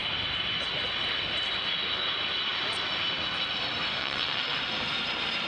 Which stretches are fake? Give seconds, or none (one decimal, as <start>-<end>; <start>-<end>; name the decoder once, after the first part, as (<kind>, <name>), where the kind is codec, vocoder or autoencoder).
4.0-4.6 (vocoder, WaveNeXt)